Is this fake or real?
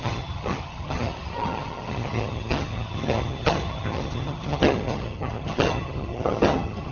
fake